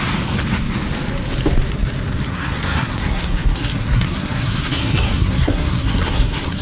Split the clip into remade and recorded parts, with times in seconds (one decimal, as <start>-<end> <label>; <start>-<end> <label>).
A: 0.0-2.3 recorded; 2.3-6.6 remade